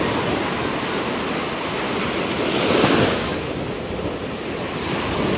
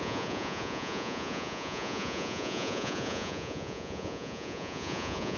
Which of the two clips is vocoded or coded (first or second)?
second